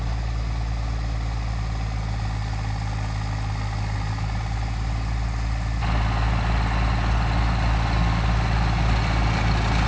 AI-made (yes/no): no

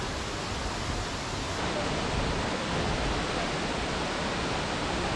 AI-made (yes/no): no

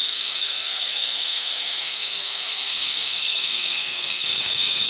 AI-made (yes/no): yes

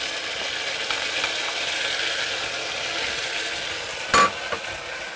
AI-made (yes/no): no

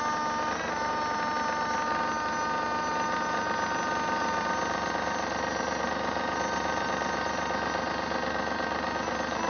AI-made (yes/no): no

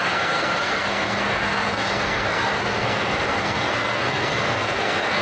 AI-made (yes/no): yes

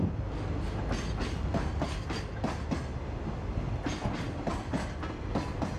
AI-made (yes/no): no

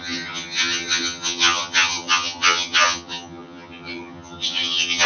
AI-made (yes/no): yes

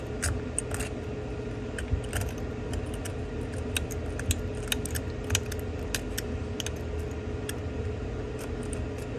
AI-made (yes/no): no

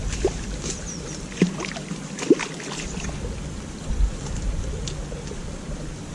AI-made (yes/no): no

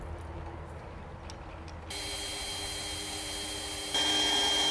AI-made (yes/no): no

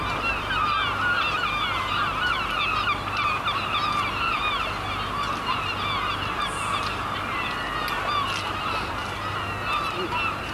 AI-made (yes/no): no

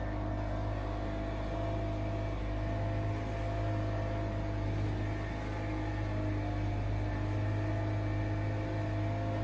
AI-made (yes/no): no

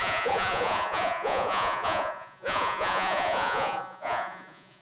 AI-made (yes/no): yes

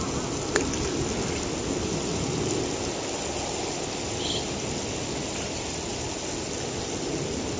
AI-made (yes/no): no